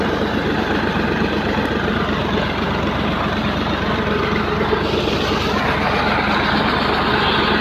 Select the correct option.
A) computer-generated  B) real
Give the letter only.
B